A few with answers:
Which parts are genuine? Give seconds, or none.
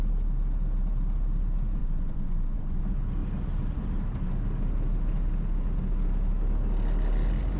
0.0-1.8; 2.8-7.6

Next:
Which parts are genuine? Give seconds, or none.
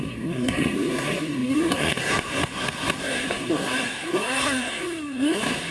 none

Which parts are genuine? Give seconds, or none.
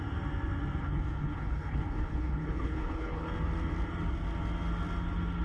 0.0-0.8; 3.3-5.4